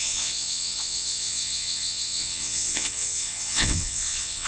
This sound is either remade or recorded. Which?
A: remade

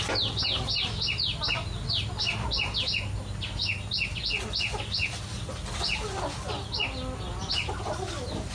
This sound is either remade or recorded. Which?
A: recorded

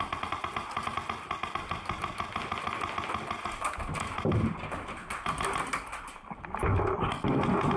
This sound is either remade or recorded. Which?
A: recorded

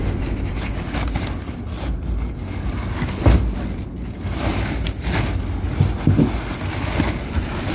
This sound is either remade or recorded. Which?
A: recorded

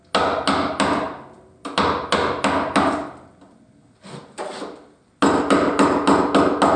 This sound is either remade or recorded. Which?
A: recorded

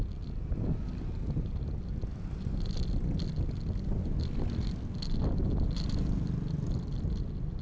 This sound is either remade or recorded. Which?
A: recorded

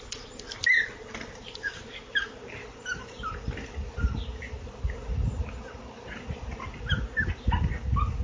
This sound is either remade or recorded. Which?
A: recorded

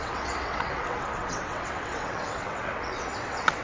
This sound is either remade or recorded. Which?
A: remade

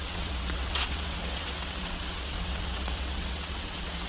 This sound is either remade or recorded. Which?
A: remade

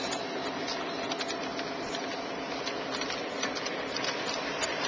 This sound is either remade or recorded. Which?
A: recorded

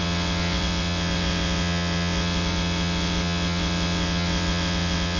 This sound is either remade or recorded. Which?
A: remade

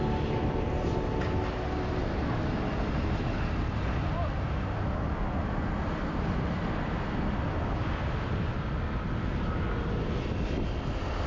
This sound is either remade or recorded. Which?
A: recorded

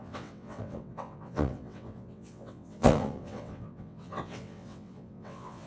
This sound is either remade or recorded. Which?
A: remade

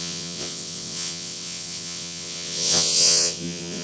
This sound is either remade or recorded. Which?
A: remade